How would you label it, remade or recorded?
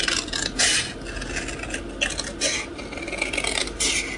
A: recorded